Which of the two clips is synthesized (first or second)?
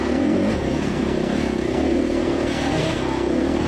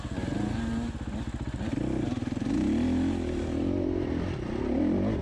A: first